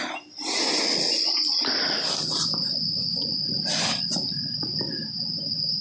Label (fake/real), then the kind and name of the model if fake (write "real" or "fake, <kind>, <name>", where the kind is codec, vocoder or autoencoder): real